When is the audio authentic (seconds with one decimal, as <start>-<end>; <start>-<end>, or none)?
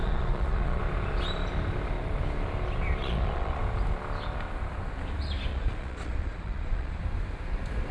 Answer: 0.8-3.0; 3.6-5.5; 7.0-7.9